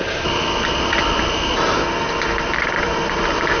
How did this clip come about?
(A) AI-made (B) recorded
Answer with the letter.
A